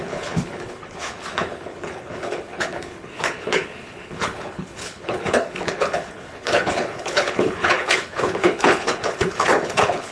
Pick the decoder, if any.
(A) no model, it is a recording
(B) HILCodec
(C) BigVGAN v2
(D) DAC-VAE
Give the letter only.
B